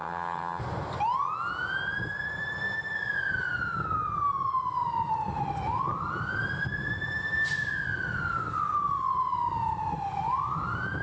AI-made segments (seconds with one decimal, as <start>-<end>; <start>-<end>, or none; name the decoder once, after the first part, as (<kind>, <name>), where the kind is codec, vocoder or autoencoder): 0.0-0.6 (vocoder, HiFi-GAN)